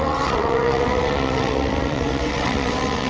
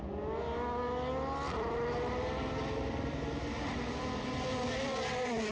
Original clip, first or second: second